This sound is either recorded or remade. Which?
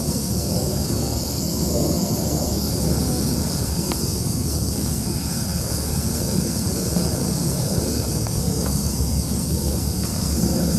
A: remade